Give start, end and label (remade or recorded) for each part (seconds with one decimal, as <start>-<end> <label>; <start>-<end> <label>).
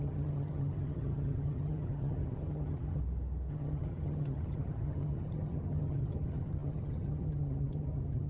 0.0-3.0 remade; 3.0-3.5 recorded; 3.5-8.3 remade